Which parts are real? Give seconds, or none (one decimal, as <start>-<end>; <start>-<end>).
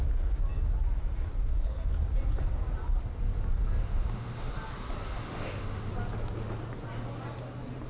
0.0-3.8; 4.5-5.2; 5.9-7.9